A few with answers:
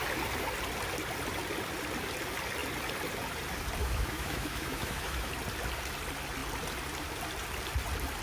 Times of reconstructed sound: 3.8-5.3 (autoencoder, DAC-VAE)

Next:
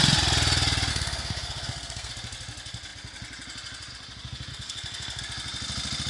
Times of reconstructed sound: 0.9-2.1 (codec, SNAC); 4.5-5.2

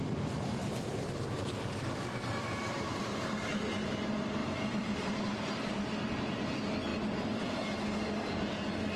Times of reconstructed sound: 0.6-3.7 (vocoder, BigVGAN v2); 4.4-5.9

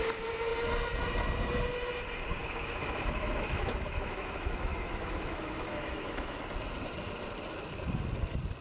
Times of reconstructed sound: 2.4-6.4 (autoencoder, DAC-VAE)

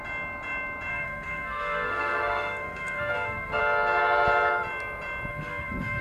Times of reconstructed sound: 0.9-3.6 (codec, SNAC); 5.3-6.0

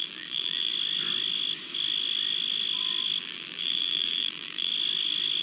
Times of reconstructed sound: 0.0-0.7 (vocoder, BigVGAN v2); 3.2-4.7

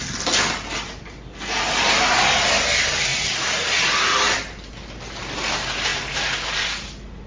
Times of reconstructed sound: none

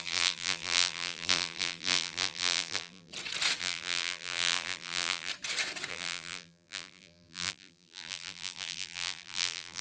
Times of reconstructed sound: 0.0-3.1 (vocoder, BigVGAN v2); 3.6-5.3; 5.9-9.8